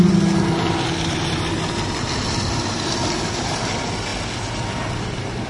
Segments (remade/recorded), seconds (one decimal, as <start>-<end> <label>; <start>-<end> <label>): 0.0-5.5 recorded